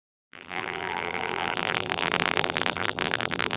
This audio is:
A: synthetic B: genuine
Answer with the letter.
A